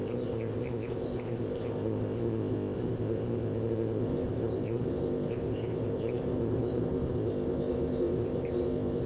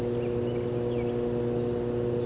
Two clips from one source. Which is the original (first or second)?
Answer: second